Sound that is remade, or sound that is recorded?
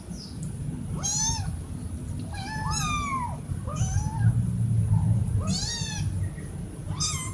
recorded